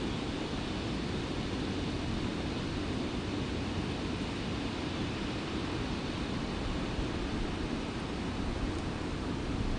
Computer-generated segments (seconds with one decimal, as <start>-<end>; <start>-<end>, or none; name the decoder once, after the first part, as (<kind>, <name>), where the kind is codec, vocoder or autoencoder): 4.5-5.6 (vocoder, BigVGAN v2)

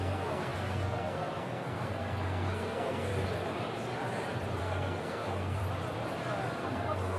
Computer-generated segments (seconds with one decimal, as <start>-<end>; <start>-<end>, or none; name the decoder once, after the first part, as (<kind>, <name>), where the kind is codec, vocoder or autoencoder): 0.0-3.1 (codec, SNAC); 4.6-5.6; 6.6-7.2